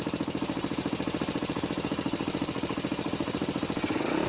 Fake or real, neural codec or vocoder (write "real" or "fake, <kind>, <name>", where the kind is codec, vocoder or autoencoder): fake, vocoder, BigVGAN v2